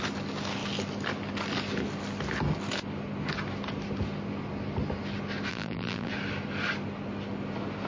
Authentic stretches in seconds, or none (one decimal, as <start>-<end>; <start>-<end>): 0.0-5.5; 6.1-7.9